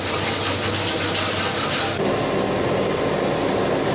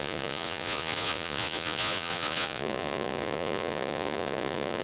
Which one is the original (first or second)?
first